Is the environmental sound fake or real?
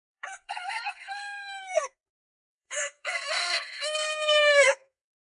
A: fake